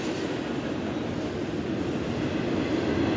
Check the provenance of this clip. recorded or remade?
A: recorded